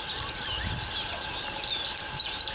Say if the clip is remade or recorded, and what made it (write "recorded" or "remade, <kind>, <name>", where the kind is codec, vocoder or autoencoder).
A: recorded